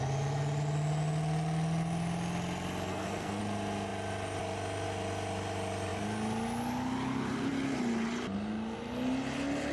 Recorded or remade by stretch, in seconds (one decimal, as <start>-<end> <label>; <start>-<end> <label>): 0.0-2.9 recorded; 2.9-3.4 remade; 3.4-9.7 recorded